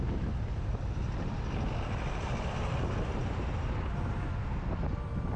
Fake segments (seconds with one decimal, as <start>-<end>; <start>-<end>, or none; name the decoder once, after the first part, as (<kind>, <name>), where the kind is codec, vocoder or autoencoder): none